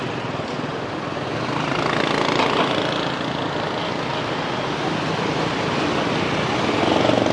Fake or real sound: real